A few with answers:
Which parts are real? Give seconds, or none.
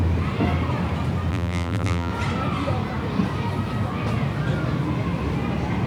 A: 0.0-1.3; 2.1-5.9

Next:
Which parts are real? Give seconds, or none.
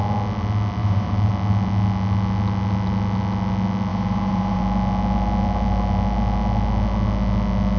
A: 0.0-0.8; 1.3-3.9; 4.6-7.8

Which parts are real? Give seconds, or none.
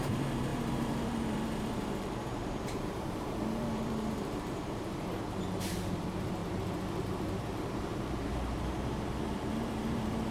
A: 6.4-7.0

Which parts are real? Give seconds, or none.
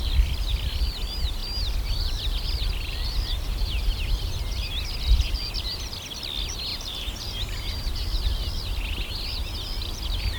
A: 0.0-6.7; 7.9-10.4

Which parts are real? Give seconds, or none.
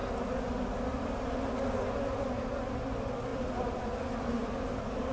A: 0.0-3.3; 4.3-5.1